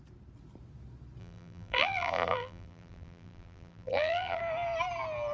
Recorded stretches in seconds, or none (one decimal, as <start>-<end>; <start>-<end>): 0.0-1.2; 4.4-5.3